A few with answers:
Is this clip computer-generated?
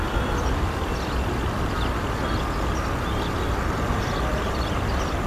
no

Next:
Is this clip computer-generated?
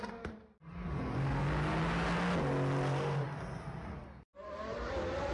no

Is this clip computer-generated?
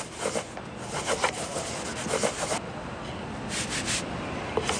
no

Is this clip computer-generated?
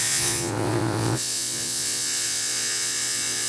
yes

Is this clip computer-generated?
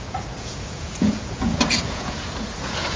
yes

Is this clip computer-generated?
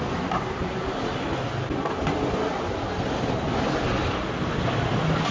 no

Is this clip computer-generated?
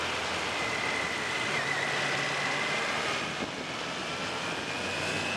no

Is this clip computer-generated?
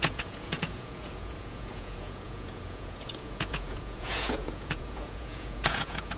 yes